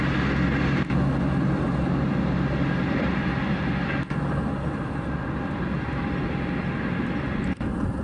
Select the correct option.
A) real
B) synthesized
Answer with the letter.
A